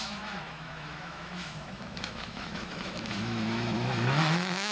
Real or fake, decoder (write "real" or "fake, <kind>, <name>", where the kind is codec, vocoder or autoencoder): fake, autoencoder, DAC-VAE